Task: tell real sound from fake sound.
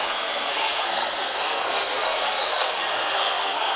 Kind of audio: fake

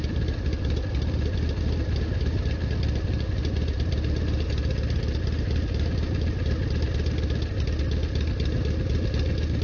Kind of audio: real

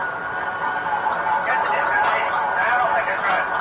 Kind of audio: real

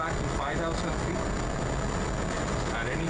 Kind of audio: real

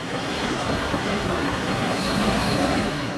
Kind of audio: fake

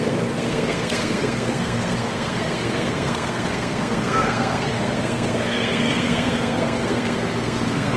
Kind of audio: fake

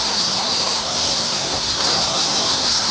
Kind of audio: fake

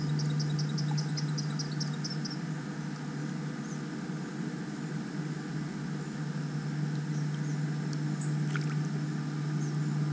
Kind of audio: real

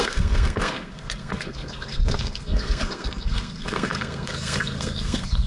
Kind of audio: fake